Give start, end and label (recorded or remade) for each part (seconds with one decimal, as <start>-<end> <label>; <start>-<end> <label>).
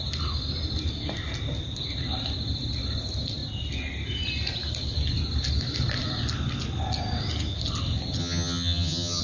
0.0-8.2 recorded; 8.2-9.2 remade